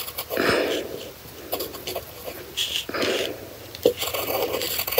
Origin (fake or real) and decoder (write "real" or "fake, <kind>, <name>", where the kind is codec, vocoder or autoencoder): real